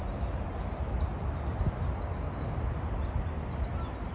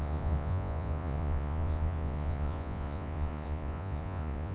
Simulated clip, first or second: second